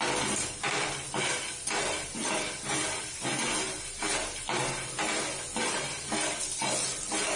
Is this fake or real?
real